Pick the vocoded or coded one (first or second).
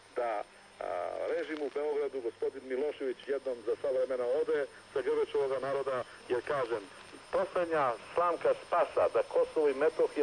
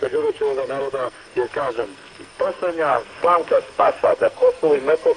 second